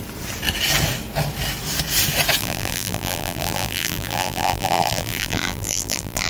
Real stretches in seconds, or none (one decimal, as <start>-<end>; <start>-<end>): 0.0-2.4

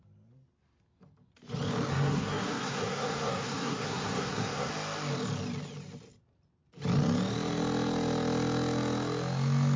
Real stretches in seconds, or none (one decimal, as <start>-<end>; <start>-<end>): 0.0-1.9; 4.7-9.8

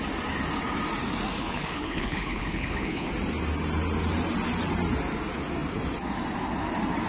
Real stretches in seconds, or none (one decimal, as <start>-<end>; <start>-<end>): 0.0-1.4; 3.1-7.1

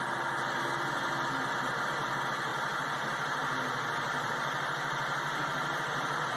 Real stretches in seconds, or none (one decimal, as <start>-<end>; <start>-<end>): 0.0-6.4

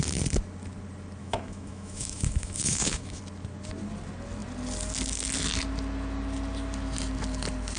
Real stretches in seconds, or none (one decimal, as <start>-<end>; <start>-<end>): 0.0-1.2; 3.2-7.8

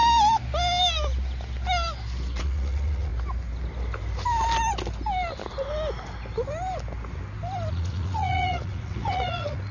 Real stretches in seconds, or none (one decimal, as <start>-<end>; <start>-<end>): 0.0-2.4; 3.1-7.7

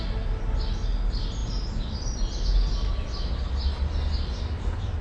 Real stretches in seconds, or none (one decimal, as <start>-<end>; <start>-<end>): 0.0-5.0

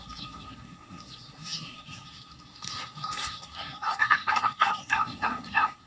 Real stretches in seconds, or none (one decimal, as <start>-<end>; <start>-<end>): none